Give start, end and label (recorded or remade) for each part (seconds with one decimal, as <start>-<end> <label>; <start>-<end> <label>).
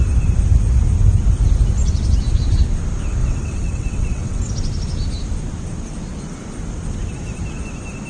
0.0-3.2 recorded; 3.2-4.5 remade; 4.5-8.1 recorded